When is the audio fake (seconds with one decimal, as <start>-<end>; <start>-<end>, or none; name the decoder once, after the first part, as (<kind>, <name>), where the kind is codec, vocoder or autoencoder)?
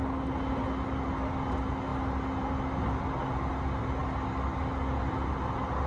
none